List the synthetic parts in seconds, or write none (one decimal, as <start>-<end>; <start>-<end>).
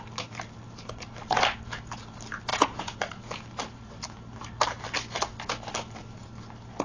2.5-3.0